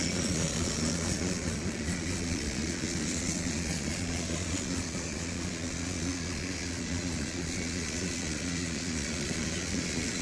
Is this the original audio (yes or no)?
no